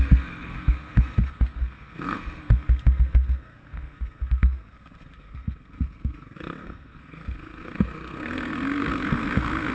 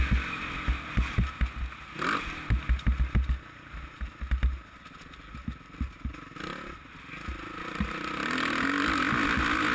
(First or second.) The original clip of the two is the second